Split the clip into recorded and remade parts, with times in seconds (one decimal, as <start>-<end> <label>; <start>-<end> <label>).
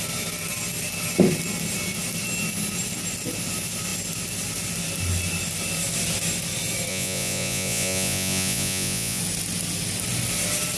0.0-6.9 recorded; 6.9-9.2 remade; 9.2-10.8 recorded